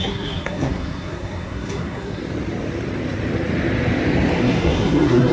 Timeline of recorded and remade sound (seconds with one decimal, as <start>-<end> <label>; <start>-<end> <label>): 0.0-2.2 remade; 2.2-4.4 recorded; 4.4-5.3 remade